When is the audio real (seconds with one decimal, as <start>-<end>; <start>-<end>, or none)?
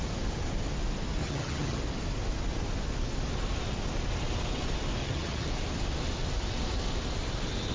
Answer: 0.0-1.2; 1.8-5.0; 5.5-7.7